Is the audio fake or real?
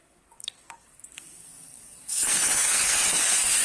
fake